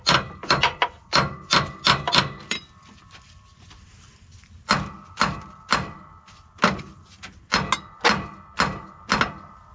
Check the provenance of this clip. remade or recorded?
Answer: recorded